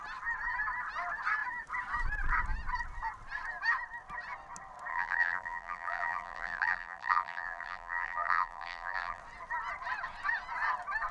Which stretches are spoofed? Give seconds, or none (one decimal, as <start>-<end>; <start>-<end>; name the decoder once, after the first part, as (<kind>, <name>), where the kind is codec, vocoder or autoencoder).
4.9-9.2 (vocoder, BigVGAN v2)